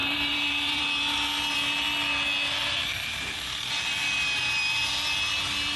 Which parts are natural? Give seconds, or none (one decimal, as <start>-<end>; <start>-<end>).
0.8-2.6; 3.7-5.8